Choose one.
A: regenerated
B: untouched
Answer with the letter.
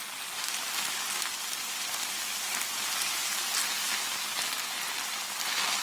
B